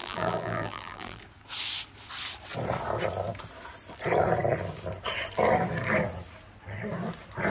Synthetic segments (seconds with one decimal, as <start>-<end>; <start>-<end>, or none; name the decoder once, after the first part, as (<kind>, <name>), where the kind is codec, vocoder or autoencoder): 0.0-1.2 (vocoder, BigVGAN v2)